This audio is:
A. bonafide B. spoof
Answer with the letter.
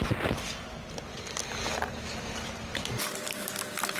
A